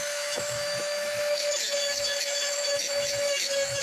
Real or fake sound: fake